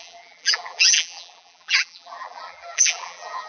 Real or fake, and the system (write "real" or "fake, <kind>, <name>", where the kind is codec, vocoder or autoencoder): fake, vocoder, BigVGAN v2